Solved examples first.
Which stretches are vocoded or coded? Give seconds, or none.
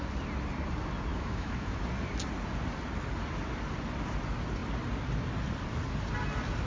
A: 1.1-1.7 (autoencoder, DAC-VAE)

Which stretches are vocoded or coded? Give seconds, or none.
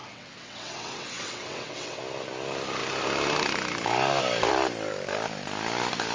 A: 0.0-2.0 (vocoder, WaveNeXt)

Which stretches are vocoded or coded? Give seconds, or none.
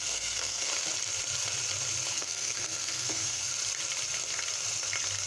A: 0.0-0.7 (codec, SNAC); 2.1-3.5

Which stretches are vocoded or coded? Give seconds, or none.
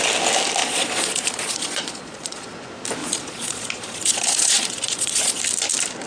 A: 0.6-2.5 (vocoder, Vocos); 3.0-5.4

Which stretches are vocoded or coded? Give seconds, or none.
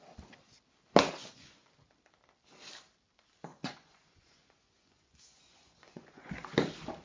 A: 1.2-1.7 (vocoder, Vocos); 3.5-6.3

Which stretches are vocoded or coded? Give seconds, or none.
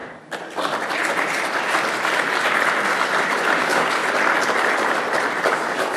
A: 3.6-4.0 (codec, DAC); 5.4-6.0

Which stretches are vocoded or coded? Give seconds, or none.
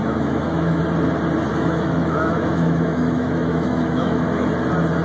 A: 0.0-0.8 (autoencoder, DAC-VAE); 1.5-4.5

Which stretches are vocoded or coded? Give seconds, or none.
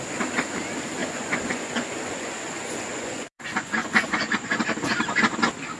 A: 1.0-4.5 (vocoder, Vocos)